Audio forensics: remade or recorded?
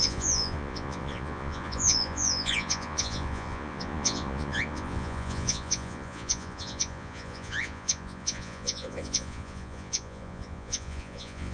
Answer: remade